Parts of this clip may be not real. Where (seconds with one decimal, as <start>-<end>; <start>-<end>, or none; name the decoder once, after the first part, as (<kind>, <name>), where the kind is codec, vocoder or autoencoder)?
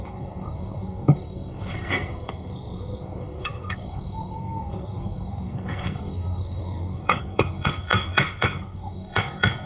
0.0-9.7 (codec, SNAC)